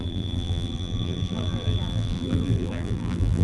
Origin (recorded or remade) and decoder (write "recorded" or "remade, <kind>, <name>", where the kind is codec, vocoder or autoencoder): remade, vocoder, BigVGAN v2